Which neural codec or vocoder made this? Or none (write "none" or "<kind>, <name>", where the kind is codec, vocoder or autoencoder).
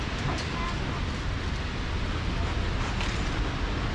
none